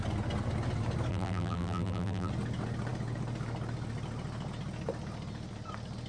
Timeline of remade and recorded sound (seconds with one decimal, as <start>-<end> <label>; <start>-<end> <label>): 0.0-1.1 recorded; 1.1-2.3 remade; 2.3-6.1 recorded